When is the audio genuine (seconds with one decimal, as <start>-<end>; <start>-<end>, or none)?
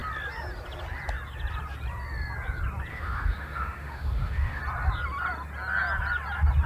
0.0-2.9; 4.6-6.7